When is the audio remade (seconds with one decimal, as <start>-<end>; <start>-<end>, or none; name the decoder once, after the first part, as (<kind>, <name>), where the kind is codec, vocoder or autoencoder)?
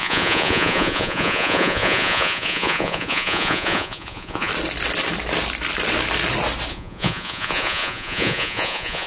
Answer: 0.0-4.5 (vocoder, Vocos); 6.7-9.1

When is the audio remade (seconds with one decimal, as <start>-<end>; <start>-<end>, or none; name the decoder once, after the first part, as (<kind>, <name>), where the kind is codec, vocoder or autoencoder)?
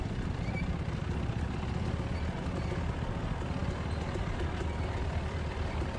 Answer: none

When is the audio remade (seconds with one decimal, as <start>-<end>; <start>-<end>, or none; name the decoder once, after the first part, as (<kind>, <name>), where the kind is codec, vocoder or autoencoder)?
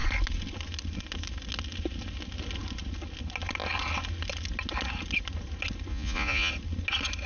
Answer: 5.9-6.5 (vocoder, Vocos)